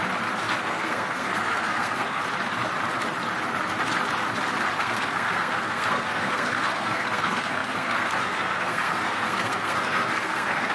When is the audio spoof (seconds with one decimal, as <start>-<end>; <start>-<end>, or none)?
0.6-2.2; 4.8-10.7